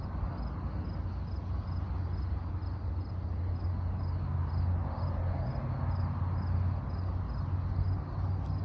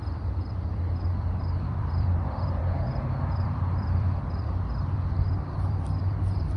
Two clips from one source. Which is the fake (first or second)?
second